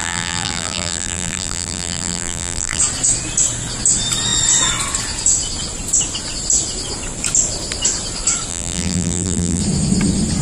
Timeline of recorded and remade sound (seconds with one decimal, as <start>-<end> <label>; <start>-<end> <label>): 0.0-2.8 remade; 2.8-8.5 recorded; 8.5-9.6 remade; 9.6-10.4 recorded